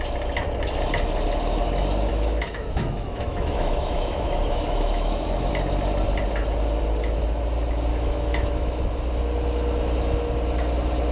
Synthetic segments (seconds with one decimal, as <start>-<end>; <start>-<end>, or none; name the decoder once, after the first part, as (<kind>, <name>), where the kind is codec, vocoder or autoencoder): 2.1-5.5 (autoencoder, DAC-VAE); 7.9-8.8